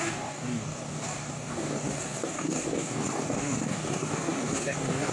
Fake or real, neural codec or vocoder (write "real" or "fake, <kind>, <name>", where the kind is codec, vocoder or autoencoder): fake, codec, DAC